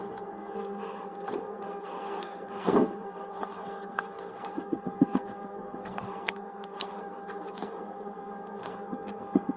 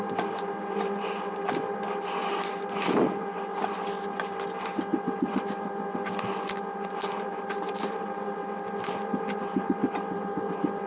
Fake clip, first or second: first